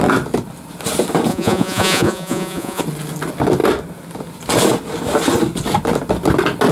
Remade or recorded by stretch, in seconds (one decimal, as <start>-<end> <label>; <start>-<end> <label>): 0.0-1.3 recorded; 1.3-2.8 remade; 2.8-6.7 recorded